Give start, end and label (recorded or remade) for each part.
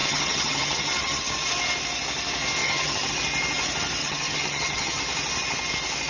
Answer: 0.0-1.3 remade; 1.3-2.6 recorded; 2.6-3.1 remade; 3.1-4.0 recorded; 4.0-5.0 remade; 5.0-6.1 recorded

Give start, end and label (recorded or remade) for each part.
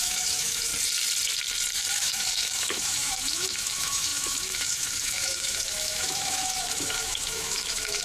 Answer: 0.0-0.7 remade; 0.7-1.9 recorded; 1.9-8.0 remade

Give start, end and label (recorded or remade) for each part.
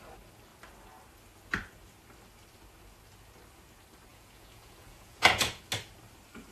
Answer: 0.0-4.1 recorded; 4.1-5.6 remade; 5.6-6.5 recorded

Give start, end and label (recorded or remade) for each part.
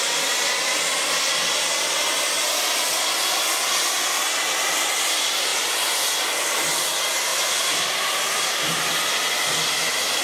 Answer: 0.0-5.5 recorded; 5.5-6.1 remade; 6.1-7.3 recorded; 7.3-8.2 remade; 8.2-10.2 recorded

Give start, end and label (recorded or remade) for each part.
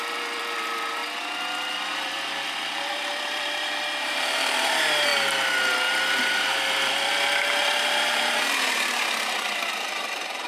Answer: 0.0-1.0 remade; 1.0-1.7 recorded; 1.7-5.1 remade; 5.1-6.5 recorded; 6.5-10.5 remade